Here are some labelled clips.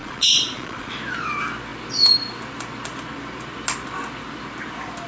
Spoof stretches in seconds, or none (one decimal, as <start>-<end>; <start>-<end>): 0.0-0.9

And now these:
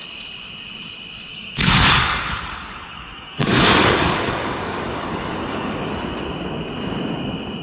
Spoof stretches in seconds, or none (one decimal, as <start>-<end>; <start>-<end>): 1.3-5.9

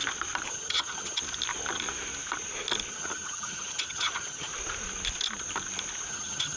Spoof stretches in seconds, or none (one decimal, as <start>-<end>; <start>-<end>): 0.5-1.2; 2.9-4.5; 6.1-6.6

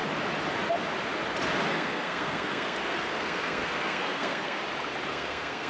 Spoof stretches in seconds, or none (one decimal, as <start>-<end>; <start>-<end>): 1.7-4.6; 5.1-5.7

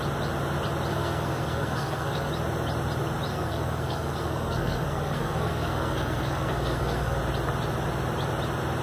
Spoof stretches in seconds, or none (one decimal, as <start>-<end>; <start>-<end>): 0.9-2.3; 3.3-7.2

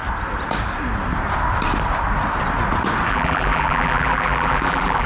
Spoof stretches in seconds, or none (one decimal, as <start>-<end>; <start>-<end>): 3.1-5.1

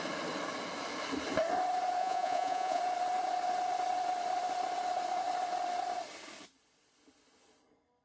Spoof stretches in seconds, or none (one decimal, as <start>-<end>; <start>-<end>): 2.0-2.8

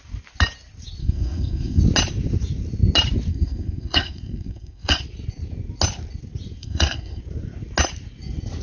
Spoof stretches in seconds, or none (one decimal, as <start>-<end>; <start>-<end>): 1.0-1.8; 3.3-5.0; 6.6-7.2